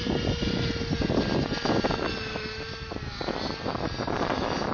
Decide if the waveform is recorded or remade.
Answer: recorded